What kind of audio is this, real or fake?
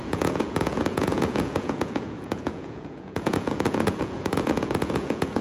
fake